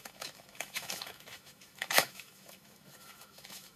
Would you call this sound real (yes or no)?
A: no